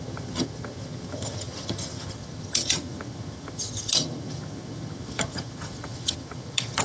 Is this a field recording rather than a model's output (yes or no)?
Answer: no